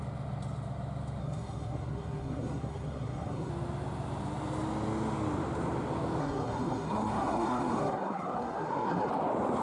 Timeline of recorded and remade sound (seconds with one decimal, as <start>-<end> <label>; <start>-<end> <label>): 0.0-1.2 recorded; 1.2-3.5 remade; 3.5-6.2 recorded; 6.2-9.1 remade; 9.1-9.6 recorded